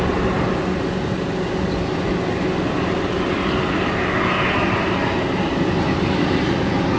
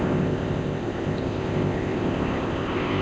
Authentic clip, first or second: first